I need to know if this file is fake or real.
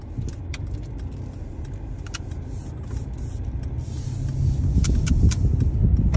real